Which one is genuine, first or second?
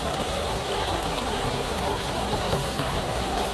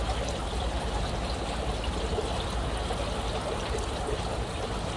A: second